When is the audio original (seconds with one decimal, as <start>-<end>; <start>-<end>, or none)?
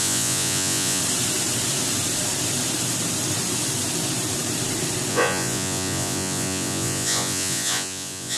1.0-5.1